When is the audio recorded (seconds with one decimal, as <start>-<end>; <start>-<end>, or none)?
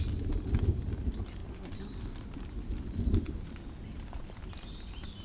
0.0-5.2